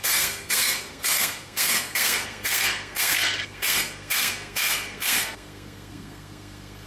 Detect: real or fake fake